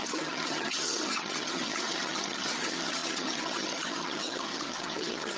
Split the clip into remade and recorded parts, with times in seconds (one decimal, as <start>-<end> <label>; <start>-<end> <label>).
0.0-5.4 remade